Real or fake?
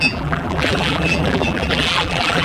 fake